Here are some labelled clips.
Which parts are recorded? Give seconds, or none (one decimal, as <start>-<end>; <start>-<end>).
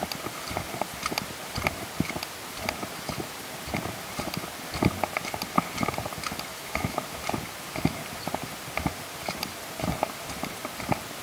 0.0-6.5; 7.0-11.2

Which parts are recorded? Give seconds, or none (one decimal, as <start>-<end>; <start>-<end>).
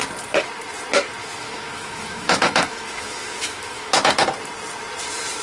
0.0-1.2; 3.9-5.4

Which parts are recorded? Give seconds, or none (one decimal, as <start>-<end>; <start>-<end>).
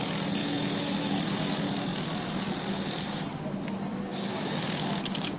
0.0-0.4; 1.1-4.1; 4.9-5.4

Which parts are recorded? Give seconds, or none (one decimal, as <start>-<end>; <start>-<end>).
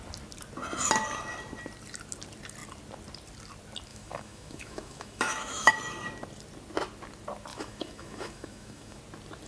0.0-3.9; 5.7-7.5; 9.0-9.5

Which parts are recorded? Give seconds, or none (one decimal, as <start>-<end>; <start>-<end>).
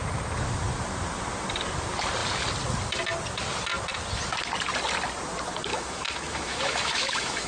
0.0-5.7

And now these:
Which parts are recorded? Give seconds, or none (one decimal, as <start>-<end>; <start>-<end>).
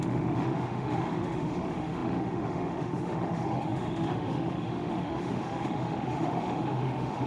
none